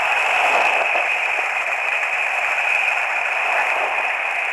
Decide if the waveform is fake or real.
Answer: real